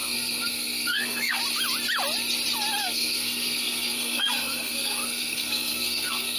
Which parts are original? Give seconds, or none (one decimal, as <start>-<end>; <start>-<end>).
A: 1.4-2.8